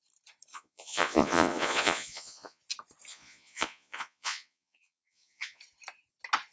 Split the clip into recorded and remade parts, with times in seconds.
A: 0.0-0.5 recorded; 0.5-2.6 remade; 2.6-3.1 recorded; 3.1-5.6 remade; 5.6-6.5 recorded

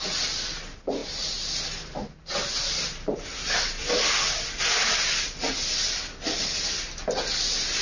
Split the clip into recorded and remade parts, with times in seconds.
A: 0.0-7.8 recorded

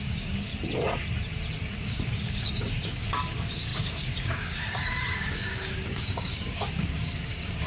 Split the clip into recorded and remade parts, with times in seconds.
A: 0.0-0.5 remade; 0.5-1.8 recorded; 1.8-7.7 remade

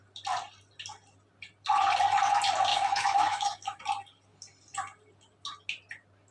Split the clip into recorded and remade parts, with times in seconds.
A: 0.0-2.7 recorded; 2.7-3.8 remade; 3.8-6.3 recorded

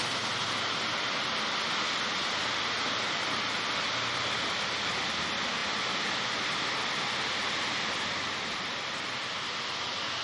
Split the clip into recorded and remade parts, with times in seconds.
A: 0.0-10.2 recorded

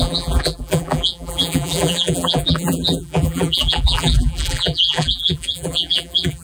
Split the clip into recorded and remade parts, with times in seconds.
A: 0.0-6.4 remade

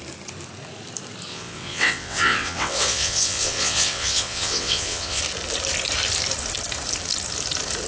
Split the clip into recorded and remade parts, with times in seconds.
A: 0.0-1.3 recorded; 1.3-5.2 remade; 5.2-7.9 recorded